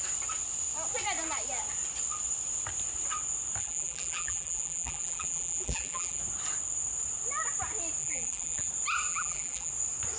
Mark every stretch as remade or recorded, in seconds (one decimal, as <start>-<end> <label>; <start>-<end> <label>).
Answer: 0.0-3.6 recorded; 3.6-6.2 remade; 6.2-8.0 recorded; 8.0-8.7 remade; 8.7-9.1 recorded; 9.1-9.7 remade; 9.7-10.2 recorded

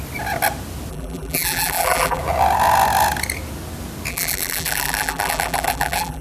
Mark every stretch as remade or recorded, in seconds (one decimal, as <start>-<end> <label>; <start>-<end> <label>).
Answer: 0.0-0.9 recorded; 0.9-2.2 remade; 2.2-4.1 recorded; 4.1-6.2 remade

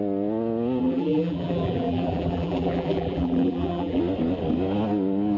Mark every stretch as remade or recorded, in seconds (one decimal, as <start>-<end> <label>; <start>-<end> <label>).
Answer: 0.0-0.8 recorded; 0.8-4.0 remade; 4.0-5.4 recorded